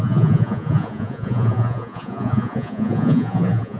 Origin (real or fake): fake